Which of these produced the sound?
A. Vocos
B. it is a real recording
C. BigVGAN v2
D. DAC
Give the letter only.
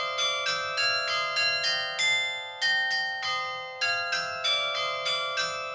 B